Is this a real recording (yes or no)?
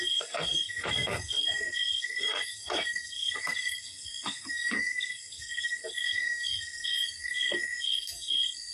no